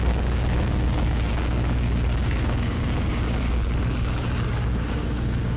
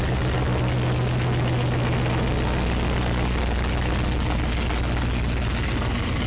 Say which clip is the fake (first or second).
first